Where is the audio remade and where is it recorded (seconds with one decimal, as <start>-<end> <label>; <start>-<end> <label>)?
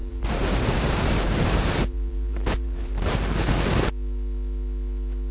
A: 0.0-3.2 remade; 3.2-5.3 recorded